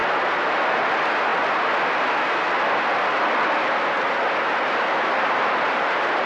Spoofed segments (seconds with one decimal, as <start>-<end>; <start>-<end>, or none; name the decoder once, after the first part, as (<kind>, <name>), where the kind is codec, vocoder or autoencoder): 0.7-1.3 (vocoder, BigVGAN v2); 5.1-6.3